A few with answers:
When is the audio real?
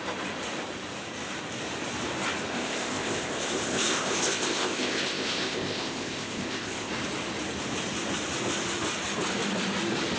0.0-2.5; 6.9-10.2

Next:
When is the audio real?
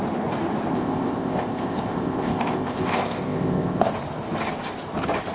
0.0-0.7; 3.9-5.3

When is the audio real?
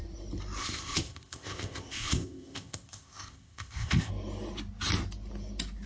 0.0-0.6; 4.1-5.9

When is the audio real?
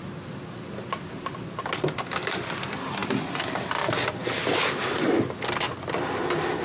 0.0-6.6